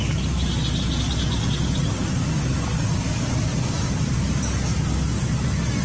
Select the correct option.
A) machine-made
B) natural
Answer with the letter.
B